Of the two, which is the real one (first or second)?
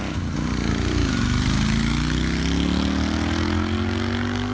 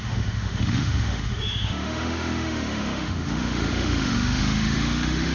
first